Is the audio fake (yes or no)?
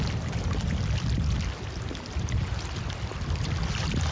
no